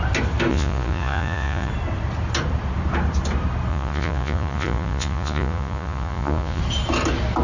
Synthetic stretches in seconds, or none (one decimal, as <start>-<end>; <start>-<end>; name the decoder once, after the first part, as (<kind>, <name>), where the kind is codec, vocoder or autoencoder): 0.5-1.7 (vocoder, Vocos); 3.7-6.6